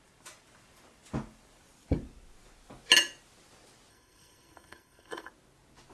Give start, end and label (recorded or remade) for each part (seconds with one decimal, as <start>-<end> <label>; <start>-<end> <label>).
0.0-3.9 recorded; 3.9-5.3 remade; 5.3-5.9 recorded